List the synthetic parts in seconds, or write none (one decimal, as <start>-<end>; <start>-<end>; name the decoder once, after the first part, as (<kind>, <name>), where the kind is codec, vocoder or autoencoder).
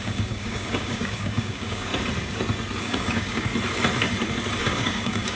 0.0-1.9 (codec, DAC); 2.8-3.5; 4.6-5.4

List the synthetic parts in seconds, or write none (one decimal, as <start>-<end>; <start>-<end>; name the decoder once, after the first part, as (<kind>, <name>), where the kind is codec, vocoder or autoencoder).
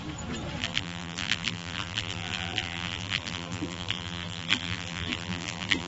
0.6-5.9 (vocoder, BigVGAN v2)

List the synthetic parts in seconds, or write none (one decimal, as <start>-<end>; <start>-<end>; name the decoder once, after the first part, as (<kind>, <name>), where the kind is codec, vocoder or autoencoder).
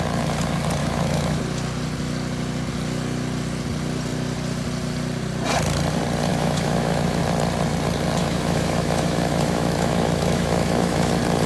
0.8-1.4 (autoencoder, DAC-VAE); 6.3-7.2; 8.2-11.1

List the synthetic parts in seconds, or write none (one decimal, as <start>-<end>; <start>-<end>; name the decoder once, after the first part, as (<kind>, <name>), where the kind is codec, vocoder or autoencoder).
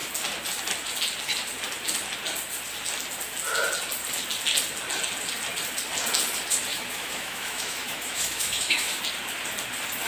6.7-9.0 (autoencoder, DAC-VAE)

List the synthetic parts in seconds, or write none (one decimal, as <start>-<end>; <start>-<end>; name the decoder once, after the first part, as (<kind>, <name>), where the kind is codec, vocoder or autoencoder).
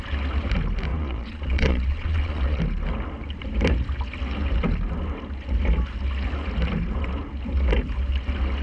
0.9-2.6 (vocoder, Vocos)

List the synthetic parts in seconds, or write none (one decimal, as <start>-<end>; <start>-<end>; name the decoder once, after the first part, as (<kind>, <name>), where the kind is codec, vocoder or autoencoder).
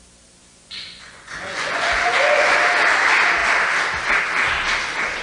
0.4-2.6 (vocoder, Vocos)